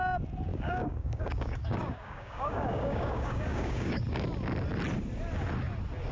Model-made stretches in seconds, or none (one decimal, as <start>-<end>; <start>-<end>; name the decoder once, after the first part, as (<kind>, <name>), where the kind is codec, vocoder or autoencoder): 0.5-4.2 (codec, DAC)